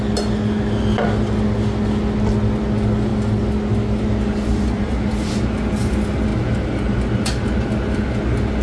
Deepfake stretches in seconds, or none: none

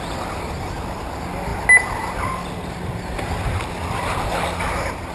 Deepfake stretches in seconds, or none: none

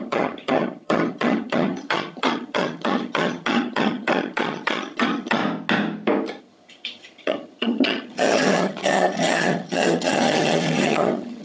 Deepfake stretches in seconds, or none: 0.0-5.4 (vocoder, HiFi-GAN); 6.4-11.4

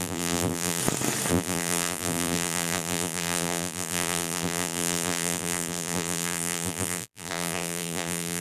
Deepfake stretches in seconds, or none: 0.0-0.8 (vocoder, BigVGAN v2); 1.3-8.4

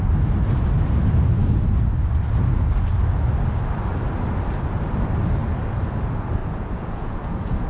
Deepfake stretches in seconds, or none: 6.4-7.7 (vocoder, Vocos)

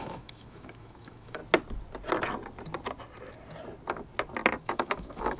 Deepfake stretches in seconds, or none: 0.0-1.4 (autoencoder, DAC-VAE); 4.6-5.4

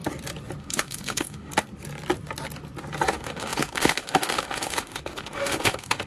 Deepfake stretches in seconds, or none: 0.6-1.5 (autoencoder, DAC-VAE); 3.1-6.1

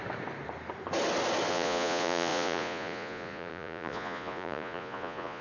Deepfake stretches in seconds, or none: 1.5-5.4 (vocoder, Vocos)